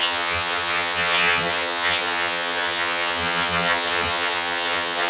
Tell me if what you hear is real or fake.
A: fake